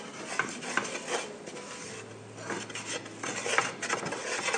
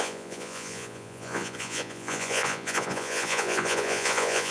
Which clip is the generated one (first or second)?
second